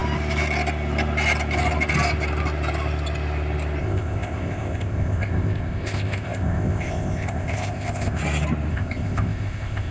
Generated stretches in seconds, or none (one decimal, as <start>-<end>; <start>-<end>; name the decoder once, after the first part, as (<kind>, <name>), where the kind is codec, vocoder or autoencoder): 3.8-8.2 (codec, ZipCodec); 8.7-9.9